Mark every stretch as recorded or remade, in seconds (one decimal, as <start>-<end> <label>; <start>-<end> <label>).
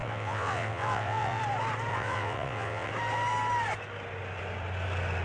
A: 0.0-1.4 remade; 1.4-1.9 recorded; 1.9-2.9 remade; 2.9-5.2 recorded